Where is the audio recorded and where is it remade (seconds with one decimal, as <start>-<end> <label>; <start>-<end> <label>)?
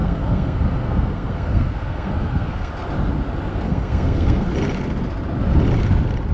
0.0-2.7 remade; 2.7-3.5 recorded; 3.5-4.5 remade; 4.5-6.3 recorded